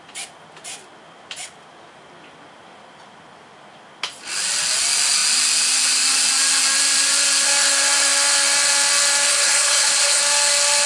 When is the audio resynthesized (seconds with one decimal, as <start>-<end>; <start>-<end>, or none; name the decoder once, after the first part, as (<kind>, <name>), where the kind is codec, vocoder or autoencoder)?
9.3-10.2 (codec, HILCodec)